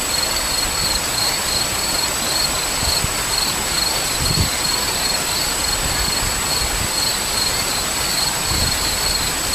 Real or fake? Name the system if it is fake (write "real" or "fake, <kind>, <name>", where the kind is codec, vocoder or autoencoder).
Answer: real